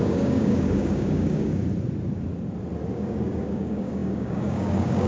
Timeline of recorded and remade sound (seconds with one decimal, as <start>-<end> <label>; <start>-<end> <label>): 0.0-1.6 remade; 1.6-2.9 recorded; 2.9-5.1 remade